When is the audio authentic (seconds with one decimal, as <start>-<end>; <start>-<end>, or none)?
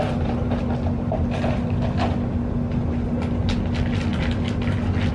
0.0-5.1